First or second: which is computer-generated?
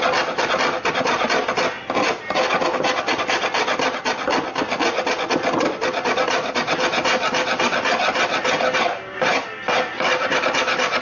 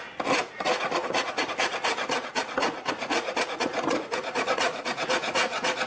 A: second